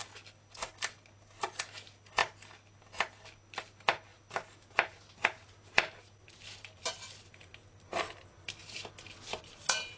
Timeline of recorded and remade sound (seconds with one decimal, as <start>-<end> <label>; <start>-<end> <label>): 0.0-10.0 recorded